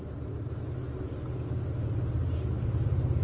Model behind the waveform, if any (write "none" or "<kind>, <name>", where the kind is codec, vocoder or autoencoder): none